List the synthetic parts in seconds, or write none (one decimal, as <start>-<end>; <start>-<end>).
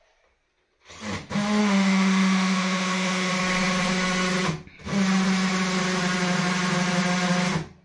1.6-3.3